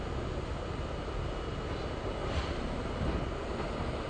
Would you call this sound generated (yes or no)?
no